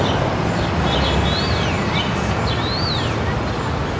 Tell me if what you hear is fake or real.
real